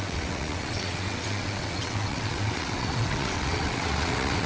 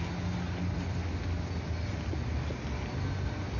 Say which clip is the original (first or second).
second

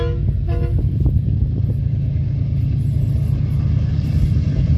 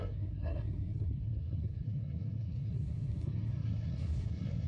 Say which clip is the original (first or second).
first